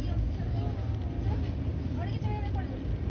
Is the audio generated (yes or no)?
no